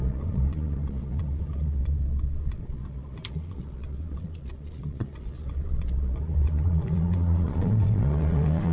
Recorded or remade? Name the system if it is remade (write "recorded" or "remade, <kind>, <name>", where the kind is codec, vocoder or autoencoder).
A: remade, vocoder, Vocos